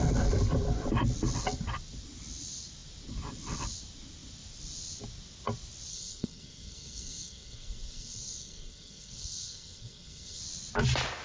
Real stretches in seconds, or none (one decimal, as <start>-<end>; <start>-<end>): 0.0-5.9; 10.4-11.2